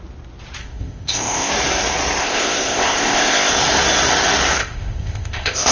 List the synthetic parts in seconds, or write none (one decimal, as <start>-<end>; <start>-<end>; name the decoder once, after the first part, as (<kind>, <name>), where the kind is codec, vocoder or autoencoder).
0.6-1.5 (codec, ZipCodec); 2.2-3.5; 4.6-5.7